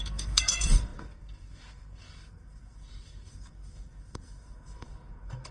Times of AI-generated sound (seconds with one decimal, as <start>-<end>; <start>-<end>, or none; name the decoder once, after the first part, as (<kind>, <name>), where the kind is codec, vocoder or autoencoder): 0.0-5.5 (codec, SNAC)